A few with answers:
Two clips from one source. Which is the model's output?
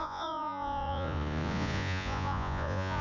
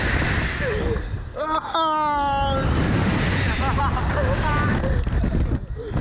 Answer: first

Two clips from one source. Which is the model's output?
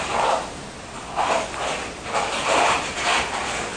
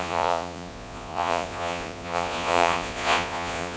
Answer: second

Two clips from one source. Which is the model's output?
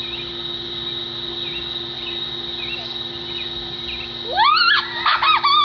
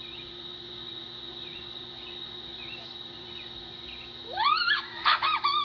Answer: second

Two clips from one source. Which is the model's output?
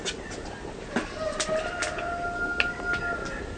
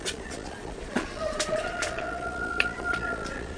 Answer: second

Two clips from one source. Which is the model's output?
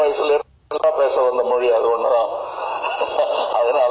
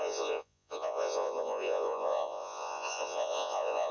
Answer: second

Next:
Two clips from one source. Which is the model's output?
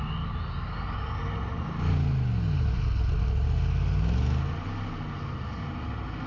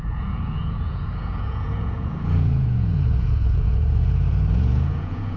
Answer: second